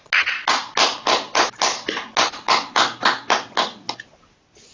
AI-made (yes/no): no